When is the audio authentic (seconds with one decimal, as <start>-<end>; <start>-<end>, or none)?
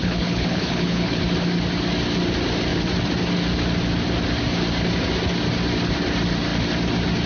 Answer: 1.2-7.3